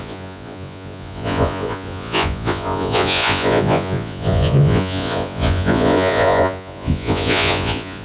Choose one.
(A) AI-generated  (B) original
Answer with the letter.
A